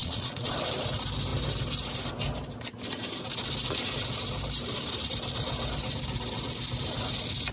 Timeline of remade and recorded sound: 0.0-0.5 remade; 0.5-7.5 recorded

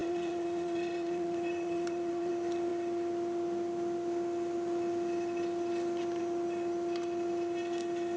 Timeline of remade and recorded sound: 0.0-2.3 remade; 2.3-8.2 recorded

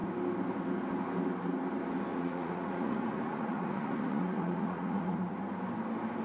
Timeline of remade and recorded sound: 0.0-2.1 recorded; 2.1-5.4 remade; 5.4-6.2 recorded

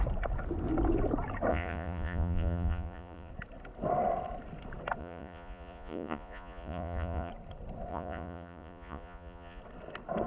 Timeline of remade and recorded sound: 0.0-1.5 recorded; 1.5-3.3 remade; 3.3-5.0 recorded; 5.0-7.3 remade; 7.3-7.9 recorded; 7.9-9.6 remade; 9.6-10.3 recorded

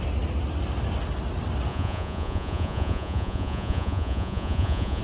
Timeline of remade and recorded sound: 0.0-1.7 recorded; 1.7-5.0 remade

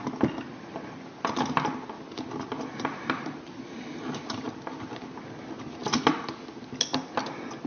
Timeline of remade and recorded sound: 0.0-7.7 recorded

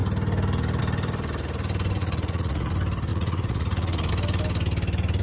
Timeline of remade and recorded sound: 0.0-2.0 recorded; 2.0-2.7 remade; 2.7-3.1 recorded; 3.1-4.1 remade; 4.1-5.2 recorded

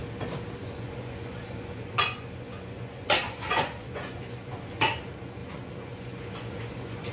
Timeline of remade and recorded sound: 0.0-0.6 recorded; 0.6-7.1 remade